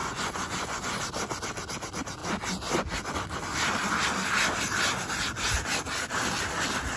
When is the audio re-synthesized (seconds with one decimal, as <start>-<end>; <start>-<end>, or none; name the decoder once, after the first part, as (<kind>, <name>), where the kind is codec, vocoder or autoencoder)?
0.0-1.0 (vocoder, Vocos)